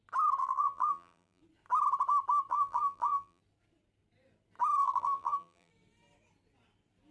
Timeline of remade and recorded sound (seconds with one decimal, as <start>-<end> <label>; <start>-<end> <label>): 0.0-0.4 recorded; 0.4-1.4 remade; 1.4-2.5 recorded; 2.5-3.4 remade; 3.4-4.8 recorded; 4.8-5.7 remade; 5.7-7.1 recorded